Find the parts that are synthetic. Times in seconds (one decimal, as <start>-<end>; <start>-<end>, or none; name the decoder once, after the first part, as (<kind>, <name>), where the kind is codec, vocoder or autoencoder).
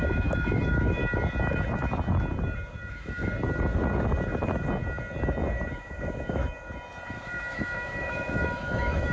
0.0-1.0 (autoencoder, DAC-VAE); 2.9-3.3; 5.7-6.4; 7.1-9.1